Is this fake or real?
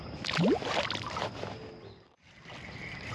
real